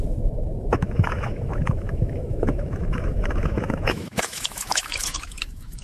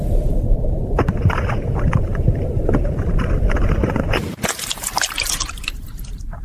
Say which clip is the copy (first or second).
first